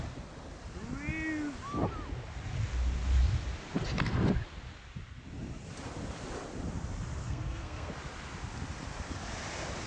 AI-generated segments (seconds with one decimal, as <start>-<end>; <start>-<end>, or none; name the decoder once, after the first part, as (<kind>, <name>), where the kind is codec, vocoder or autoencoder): 7.2-7.9 (codec, SNAC)